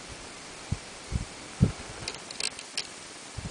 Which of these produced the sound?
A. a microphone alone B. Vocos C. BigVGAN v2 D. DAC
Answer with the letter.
A